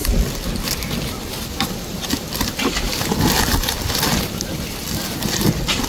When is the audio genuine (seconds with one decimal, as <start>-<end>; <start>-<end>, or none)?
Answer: 0.0-1.3